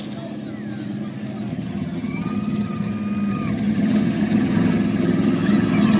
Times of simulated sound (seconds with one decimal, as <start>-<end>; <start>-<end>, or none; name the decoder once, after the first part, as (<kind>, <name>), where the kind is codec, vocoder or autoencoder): 1.5-2.9 (vocoder, HiFi-GAN); 3.3-6.0